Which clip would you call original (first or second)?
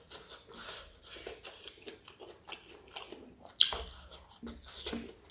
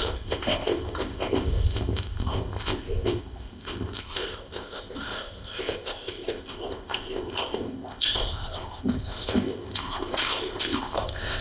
first